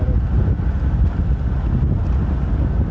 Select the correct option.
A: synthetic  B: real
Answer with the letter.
B